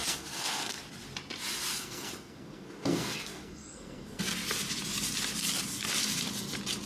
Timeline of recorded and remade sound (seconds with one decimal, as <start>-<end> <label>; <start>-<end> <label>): 0.0-0.8 remade; 0.8-1.7 recorded; 1.7-4.2 remade; 4.2-6.9 recorded